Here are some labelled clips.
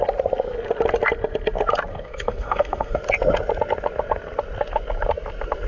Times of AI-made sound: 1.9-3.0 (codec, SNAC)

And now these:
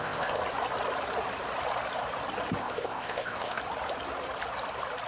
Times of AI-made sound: 0.0-0.4 (codec, ZipCodec); 2.6-3.6

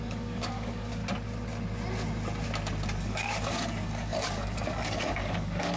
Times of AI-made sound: 0.0-1.0 (codec, DAC); 3.0-5.8